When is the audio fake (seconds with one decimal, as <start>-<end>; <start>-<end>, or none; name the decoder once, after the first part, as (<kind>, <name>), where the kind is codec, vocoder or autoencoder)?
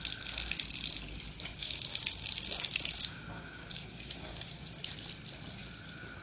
1.5-4.6 (codec, DAC)